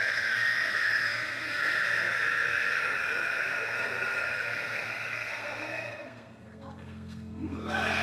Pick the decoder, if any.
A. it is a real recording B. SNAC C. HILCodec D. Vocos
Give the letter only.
B